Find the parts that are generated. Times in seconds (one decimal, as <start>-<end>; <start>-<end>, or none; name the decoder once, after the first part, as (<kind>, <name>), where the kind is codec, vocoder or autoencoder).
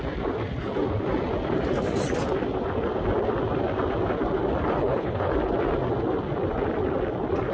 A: 4.8-5.3 (codec, HILCodec)